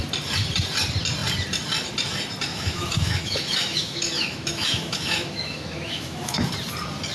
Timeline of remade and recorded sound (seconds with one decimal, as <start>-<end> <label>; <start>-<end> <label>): 0.0-2.5 recorded; 2.5-6.5 remade; 6.5-7.1 recorded